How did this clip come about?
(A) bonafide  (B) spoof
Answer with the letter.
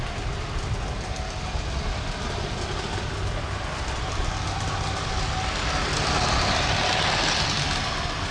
A